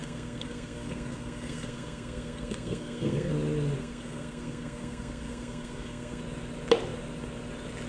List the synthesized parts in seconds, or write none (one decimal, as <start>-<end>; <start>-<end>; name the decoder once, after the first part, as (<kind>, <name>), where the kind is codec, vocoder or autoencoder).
0.0-3.3 (codec, SNAC); 3.8-6.2